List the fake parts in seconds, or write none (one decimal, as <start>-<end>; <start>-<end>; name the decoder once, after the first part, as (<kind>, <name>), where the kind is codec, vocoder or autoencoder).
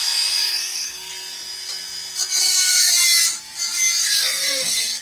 0.4-1.1 (codec, SNAC); 2.4-2.9; 4.0-5.0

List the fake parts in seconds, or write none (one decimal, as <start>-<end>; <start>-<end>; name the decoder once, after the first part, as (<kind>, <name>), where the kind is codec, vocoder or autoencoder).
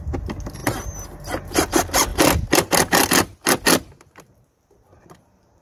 none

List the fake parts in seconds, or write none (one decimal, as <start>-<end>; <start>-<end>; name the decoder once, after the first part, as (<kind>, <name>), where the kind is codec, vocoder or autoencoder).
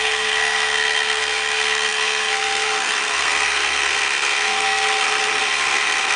0.0-6.2 (codec, SNAC)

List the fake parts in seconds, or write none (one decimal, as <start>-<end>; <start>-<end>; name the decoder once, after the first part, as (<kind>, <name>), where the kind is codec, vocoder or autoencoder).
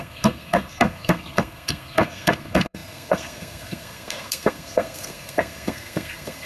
0.0-6.5 (codec, SNAC)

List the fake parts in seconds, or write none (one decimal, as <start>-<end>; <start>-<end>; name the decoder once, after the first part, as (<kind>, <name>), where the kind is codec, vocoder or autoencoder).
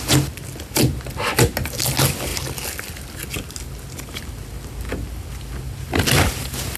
none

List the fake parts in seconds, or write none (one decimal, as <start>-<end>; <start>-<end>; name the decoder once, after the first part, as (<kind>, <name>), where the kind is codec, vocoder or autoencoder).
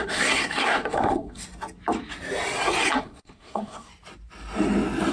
0.0-1.4 (codec, SNAC); 3.0-3.9